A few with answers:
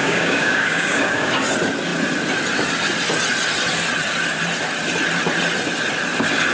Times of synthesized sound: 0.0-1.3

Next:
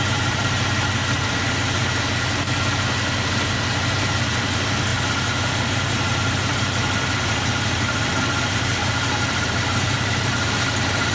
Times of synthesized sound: 0.0-1.8; 3.6-4.9; 5.5-11.1

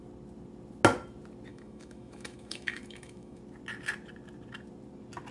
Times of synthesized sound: 1.5-3.4

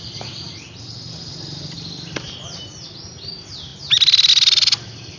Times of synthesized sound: none

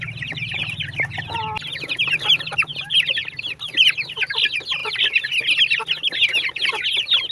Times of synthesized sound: none

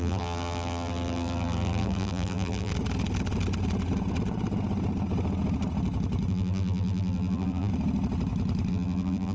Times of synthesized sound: 0.0-2.7; 6.3-7.7; 8.7-9.3

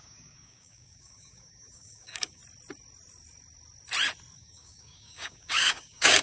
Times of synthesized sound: 0.0-2.4; 4.4-6.2

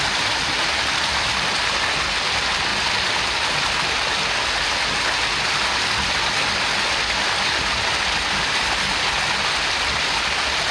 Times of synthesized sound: none